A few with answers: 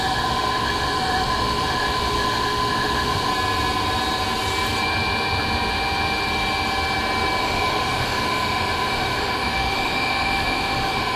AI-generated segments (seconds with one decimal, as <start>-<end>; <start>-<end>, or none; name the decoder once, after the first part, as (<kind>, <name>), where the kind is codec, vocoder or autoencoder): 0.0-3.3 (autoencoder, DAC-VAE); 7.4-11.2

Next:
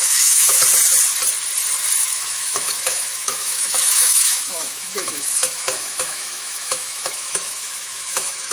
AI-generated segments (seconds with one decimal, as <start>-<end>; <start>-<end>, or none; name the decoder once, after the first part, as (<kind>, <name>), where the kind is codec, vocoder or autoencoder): 0.0-0.6 (autoencoder, DAC-VAE); 2.0-8.5

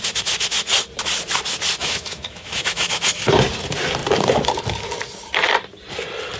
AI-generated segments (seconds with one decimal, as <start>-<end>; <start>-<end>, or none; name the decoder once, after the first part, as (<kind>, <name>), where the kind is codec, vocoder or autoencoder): 1.8-2.9 (autoencoder, DAC-VAE)

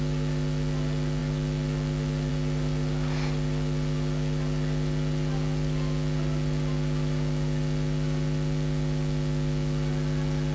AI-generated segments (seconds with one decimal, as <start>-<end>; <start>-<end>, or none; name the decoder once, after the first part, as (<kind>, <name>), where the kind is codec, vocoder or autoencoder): none

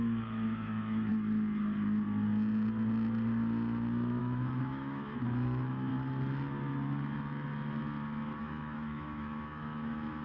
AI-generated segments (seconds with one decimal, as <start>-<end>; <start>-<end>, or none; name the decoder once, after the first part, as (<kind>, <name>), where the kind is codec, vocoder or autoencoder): 0.0-1.1 (autoencoder, DAC-VAE); 4.2-5.9; 8.4-10.2

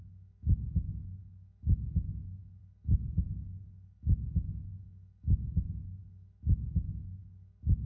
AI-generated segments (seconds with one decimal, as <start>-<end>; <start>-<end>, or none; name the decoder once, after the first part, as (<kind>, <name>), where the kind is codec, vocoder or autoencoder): 0.0-2.6 (autoencoder, DAC-VAE); 4.0-4.7; 5.7-7.9

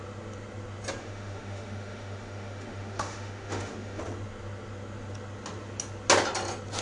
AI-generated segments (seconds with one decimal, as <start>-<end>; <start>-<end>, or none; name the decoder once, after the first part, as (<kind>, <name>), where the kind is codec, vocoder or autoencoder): 1.0-4.0 (autoencoder, DAC-VAE)

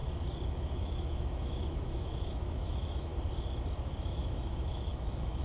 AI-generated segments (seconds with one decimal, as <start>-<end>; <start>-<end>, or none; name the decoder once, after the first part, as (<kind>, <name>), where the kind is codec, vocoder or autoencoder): 0.5-3.1 (autoencoder, DAC-VAE); 4.0-5.4